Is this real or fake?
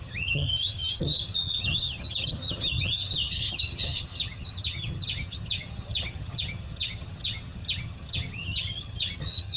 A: fake